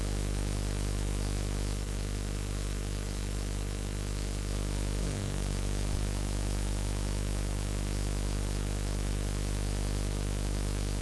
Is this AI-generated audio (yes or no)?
yes